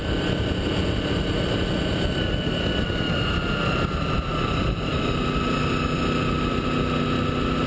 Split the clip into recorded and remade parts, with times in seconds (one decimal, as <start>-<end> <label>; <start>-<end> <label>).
0.0-4.3 recorded; 4.3-6.7 remade; 6.7-7.7 recorded